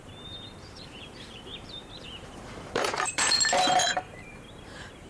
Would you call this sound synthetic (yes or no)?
yes